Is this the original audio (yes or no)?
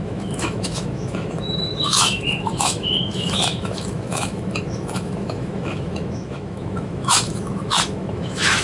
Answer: no